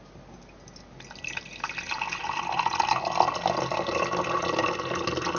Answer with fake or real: real